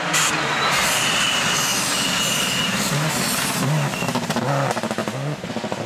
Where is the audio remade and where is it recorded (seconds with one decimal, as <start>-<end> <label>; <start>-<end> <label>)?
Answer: 0.0-5.0 recorded; 5.0-5.5 remade; 5.5-5.9 recorded